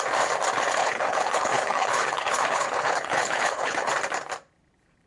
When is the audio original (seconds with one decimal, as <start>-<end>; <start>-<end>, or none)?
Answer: 0.0-0.8; 3.9-5.1